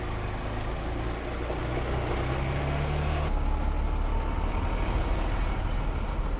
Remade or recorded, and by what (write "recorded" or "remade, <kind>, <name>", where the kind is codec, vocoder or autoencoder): recorded